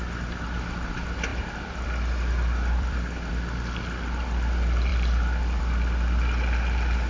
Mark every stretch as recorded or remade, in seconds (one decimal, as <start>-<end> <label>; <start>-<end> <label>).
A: 0.0-1.3 recorded; 1.3-3.3 remade; 3.3-4.9 recorded; 4.9-5.6 remade; 5.6-7.1 recorded